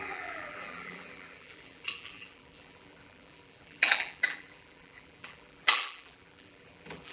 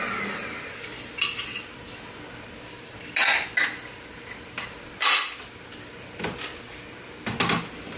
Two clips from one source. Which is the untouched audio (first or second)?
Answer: second